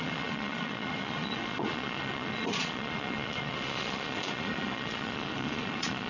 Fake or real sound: fake